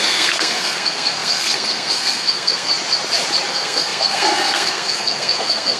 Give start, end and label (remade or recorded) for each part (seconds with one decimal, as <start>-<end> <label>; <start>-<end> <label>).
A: 0.0-2.7 remade; 2.7-3.5 recorded; 3.5-5.8 remade